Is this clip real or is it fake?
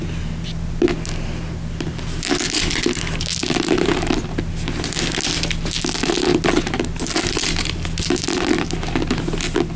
real